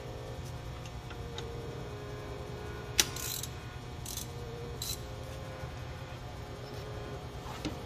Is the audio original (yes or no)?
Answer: no